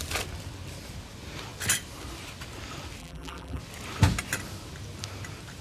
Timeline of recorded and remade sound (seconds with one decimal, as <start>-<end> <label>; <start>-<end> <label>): 0.0-3.0 recorded; 3.0-3.6 remade; 3.6-5.6 recorded